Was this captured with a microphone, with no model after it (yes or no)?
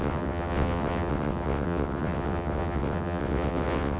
no